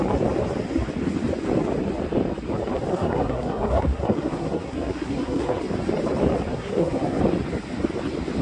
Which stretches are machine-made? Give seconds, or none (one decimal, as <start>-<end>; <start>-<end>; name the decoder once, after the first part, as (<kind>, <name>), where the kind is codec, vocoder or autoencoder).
2.9-5.6 (codec, SNAC); 6.5-7.2